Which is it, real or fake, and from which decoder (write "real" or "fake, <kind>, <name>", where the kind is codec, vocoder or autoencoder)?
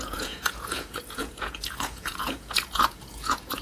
fake, vocoder, Vocos